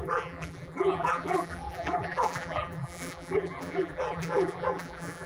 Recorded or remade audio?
remade